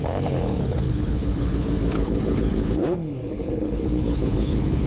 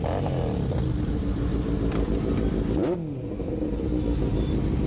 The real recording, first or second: second